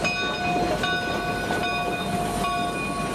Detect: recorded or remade recorded